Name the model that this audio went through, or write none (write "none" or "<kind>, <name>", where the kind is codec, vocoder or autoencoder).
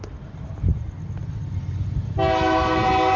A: none